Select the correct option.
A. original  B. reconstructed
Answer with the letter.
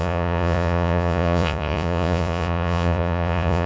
B